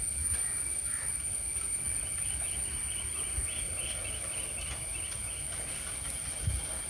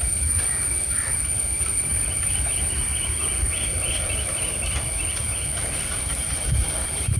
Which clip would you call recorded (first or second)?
first